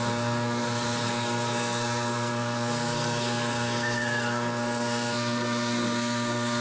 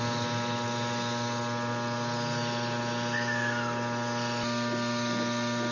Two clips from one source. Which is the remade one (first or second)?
first